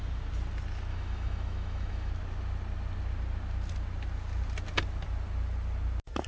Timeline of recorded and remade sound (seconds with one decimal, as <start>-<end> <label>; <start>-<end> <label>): 0.0-0.9 recorded; 0.9-2.1 remade; 2.1-6.3 recorded